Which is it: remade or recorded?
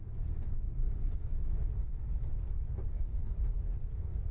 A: recorded